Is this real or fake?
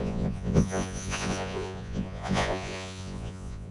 fake